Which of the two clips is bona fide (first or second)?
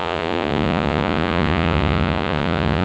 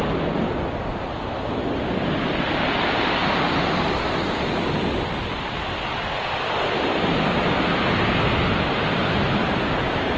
second